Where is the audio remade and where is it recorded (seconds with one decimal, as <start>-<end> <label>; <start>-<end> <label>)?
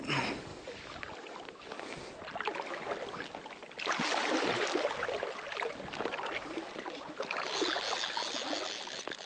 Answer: 0.0-9.3 recorded